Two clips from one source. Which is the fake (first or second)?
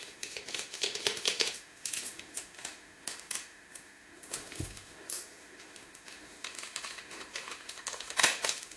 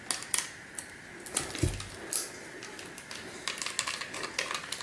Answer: first